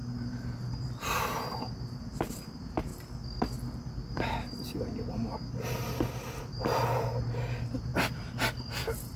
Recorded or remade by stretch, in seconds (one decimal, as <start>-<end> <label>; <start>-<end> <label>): 0.0-2.9 remade; 2.9-6.4 recorded; 6.4-7.9 remade; 7.9-8.7 recorded; 8.7-9.2 remade